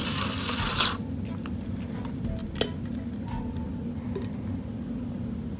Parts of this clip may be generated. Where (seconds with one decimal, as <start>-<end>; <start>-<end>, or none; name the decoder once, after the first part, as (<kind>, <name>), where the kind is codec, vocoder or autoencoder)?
none

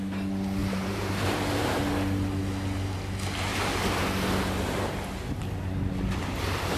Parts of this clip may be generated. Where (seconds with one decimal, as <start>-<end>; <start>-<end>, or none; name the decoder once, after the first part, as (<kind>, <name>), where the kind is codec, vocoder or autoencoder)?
0.6-1.8 (vocoder, BigVGAN v2)